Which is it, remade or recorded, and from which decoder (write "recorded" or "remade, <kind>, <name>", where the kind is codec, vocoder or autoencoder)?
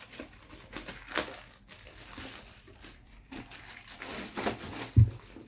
recorded